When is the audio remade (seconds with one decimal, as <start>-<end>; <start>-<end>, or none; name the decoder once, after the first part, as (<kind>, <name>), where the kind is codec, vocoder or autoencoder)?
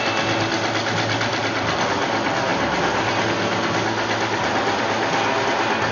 none